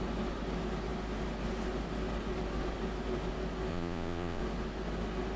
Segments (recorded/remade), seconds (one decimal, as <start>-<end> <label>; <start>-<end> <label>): 0.0-3.7 recorded; 3.7-4.4 remade; 4.4-5.4 recorded

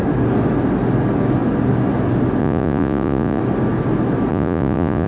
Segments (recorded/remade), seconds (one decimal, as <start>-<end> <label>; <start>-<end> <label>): 0.0-2.4 recorded; 2.4-3.4 remade; 3.4-4.3 recorded; 4.3-5.1 remade

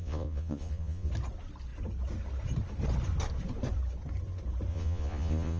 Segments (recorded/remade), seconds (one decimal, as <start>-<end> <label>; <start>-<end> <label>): 0.0-1.1 remade; 1.1-4.7 recorded; 4.7-5.6 remade

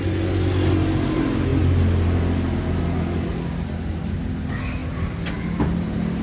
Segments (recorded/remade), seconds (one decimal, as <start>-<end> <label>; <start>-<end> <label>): 0.0-6.2 recorded

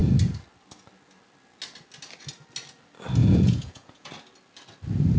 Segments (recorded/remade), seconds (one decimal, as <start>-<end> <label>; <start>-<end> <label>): 0.0-3.2 recorded; 3.2-4.1 remade; 4.1-5.2 recorded

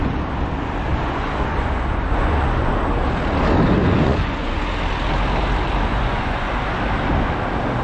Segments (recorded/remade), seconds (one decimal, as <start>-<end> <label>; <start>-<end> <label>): 0.0-0.9 recorded; 0.9-2.7 remade; 2.7-3.8 recorded; 3.8-4.6 remade; 4.6-5.9 recorded; 5.9-6.5 remade; 6.5-7.8 recorded

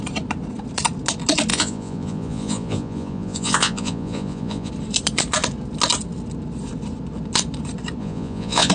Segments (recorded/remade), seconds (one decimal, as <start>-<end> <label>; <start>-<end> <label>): 0.0-1.5 recorded; 1.5-4.7 remade; 4.7-8.0 recorded; 8.0-8.7 remade

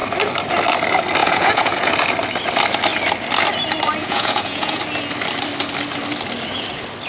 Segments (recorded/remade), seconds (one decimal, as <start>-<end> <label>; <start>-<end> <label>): 0.0-1.2 recorded; 1.2-1.9 remade; 1.9-4.0 recorded; 4.0-4.8 remade; 4.8-7.1 recorded